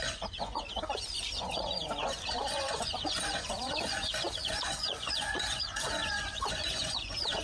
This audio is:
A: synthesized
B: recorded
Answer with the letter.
A